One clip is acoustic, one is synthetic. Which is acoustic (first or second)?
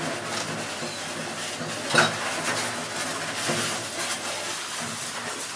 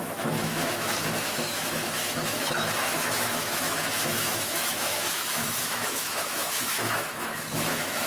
first